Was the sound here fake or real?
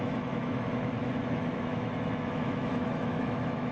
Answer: fake